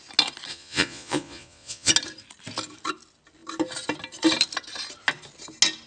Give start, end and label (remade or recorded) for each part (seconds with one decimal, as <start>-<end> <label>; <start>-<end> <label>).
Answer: 0.0-0.5 recorded; 0.5-1.9 remade; 1.9-5.9 recorded